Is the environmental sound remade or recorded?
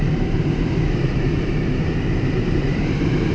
remade